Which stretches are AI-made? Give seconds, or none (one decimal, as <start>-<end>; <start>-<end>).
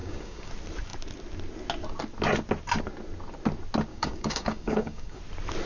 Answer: 0.0-0.5; 3.9-5.2